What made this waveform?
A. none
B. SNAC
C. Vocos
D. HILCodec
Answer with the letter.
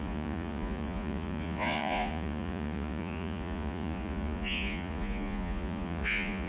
C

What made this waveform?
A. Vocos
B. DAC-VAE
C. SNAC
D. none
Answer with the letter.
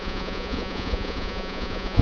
A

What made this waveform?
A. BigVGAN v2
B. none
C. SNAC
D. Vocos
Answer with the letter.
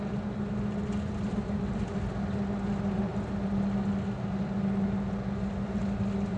B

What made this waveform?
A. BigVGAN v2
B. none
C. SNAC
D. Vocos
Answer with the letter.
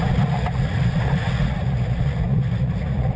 D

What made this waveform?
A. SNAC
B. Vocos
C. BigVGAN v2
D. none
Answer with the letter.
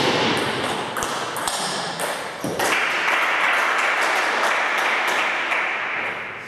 D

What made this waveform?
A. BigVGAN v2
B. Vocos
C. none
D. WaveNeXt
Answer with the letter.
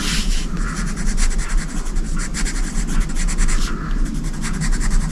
C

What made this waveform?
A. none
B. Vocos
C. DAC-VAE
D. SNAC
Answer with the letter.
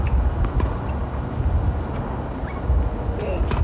A